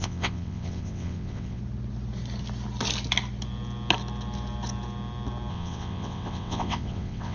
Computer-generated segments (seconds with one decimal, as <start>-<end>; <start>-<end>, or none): 0.0-1.6; 5.5-7.3